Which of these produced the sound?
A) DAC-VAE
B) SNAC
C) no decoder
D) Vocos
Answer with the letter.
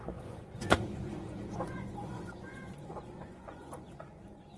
D